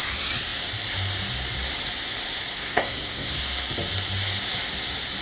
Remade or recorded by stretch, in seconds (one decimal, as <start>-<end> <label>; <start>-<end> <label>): 0.0-2.5 recorded; 2.5-3.4 remade; 3.4-5.2 recorded